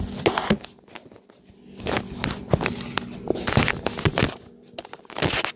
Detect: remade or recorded recorded